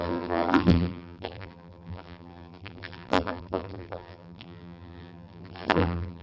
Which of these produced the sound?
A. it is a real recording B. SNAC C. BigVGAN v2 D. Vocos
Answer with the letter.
C